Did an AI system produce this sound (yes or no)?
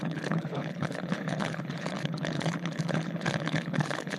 yes